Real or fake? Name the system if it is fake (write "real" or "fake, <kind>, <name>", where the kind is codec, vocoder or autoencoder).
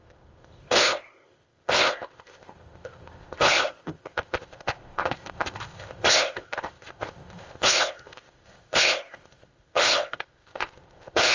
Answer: fake, codec, ZipCodec